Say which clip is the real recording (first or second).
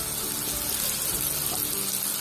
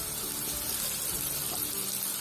first